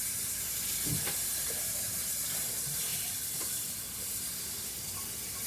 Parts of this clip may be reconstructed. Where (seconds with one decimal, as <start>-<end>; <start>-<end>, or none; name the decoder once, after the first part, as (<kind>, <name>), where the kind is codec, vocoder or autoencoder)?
none